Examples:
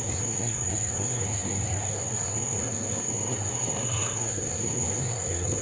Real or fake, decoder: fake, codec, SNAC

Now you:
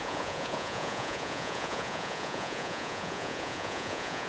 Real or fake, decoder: fake, vocoder, Vocos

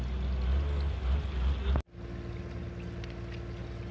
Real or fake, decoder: real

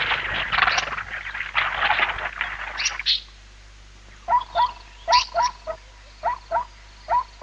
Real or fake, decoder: real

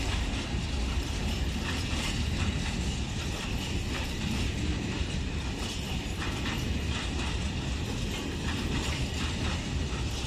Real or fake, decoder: real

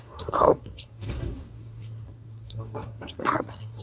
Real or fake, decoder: fake, codec, SNAC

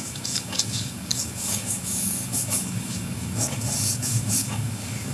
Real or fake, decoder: fake, codec, DAC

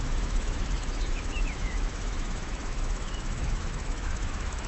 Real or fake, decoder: fake, autoencoder, DAC-VAE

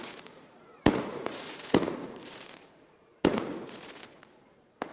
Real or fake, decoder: fake, vocoder, Vocos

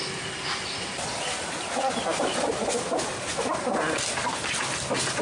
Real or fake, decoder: real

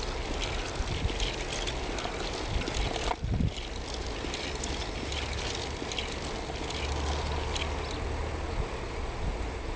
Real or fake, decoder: real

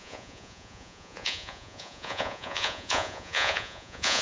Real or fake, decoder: fake, vocoder, Vocos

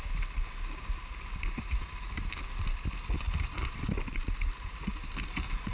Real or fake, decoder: real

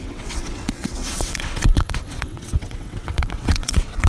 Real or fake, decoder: fake, vocoder, WaveNeXt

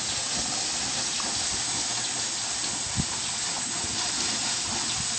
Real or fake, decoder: real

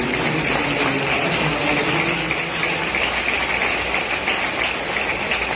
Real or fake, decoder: real